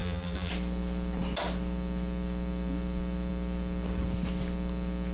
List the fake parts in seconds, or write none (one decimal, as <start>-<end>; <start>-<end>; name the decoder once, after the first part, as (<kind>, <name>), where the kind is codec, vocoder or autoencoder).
0.0-0.5 (vocoder, BigVGAN v2)